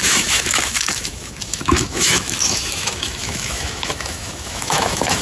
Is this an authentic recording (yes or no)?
no